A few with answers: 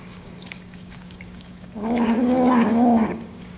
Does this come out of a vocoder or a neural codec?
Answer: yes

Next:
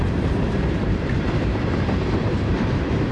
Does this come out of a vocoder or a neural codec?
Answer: yes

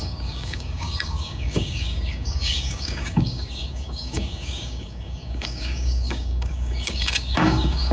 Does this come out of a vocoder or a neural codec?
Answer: yes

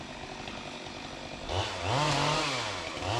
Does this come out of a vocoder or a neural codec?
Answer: no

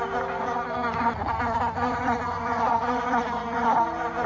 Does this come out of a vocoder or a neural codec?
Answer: no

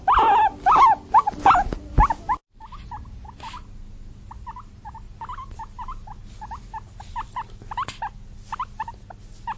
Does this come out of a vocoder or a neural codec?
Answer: no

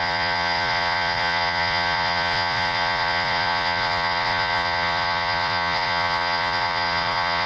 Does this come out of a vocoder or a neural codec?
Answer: yes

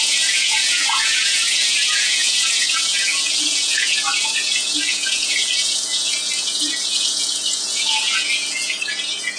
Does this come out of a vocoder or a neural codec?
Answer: yes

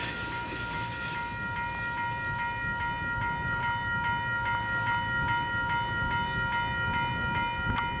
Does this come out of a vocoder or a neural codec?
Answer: no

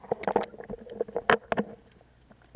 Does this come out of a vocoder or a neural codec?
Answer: no